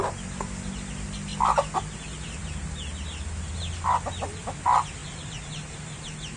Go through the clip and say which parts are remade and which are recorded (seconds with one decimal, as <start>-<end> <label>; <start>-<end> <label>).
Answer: 0.0-5.0 recorded; 5.0-6.4 remade